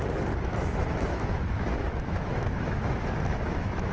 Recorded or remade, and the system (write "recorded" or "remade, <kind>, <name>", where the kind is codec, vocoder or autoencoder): remade, autoencoder, DAC-VAE